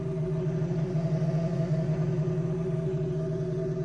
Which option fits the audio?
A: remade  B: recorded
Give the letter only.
B